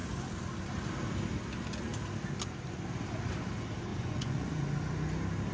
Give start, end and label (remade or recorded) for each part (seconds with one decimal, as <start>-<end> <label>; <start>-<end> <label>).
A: 0.0-3.9 recorded; 3.9-4.6 remade; 4.6-5.5 recorded